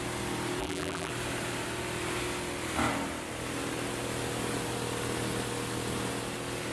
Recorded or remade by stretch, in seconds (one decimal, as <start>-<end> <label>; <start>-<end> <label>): 0.0-0.6 recorded; 0.6-1.1 remade; 1.1-6.7 recorded

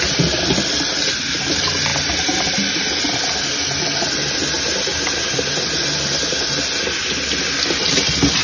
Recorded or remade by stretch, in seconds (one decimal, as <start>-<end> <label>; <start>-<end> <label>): 0.0-8.4 recorded

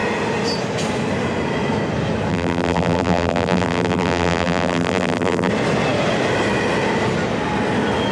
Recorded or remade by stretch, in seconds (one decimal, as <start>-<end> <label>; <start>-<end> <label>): 0.0-2.3 recorded; 2.3-5.5 remade; 5.5-8.1 recorded

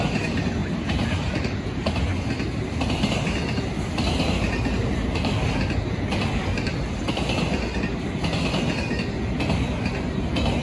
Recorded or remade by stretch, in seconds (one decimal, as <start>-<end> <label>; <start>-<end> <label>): 0.0-10.6 recorded

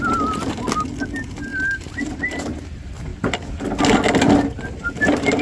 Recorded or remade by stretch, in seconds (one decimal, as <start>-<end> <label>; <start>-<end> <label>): 0.0-3.1 remade; 3.1-4.8 recorded; 4.8-5.4 remade